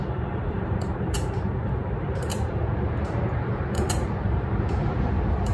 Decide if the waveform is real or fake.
fake